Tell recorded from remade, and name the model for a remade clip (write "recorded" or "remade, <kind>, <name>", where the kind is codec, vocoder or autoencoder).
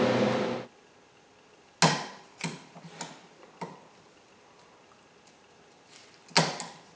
recorded